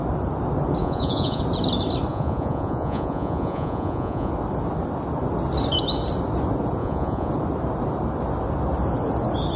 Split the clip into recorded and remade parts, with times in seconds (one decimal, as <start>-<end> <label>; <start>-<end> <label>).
0.0-0.8 recorded; 0.8-1.4 remade; 1.4-2.1 recorded; 2.1-4.3 remade; 4.3-6.8 recorded; 6.8-7.3 remade; 7.3-9.6 recorded